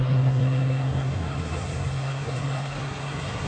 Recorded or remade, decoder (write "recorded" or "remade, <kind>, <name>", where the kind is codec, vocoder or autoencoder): remade, codec, SNAC